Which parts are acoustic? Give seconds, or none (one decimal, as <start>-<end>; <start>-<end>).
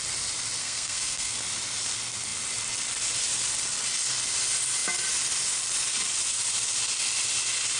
0.0-0.6; 1.3-7.8